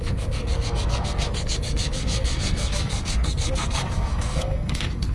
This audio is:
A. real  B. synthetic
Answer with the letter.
B